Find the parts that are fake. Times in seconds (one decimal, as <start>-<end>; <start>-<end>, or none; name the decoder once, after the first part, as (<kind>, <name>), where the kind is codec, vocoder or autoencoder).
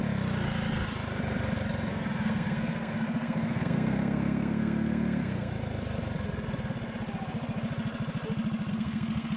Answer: 1.9-5.5 (codec, SNAC); 8.7-9.4